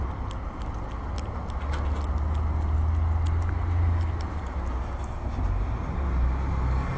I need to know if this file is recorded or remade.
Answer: recorded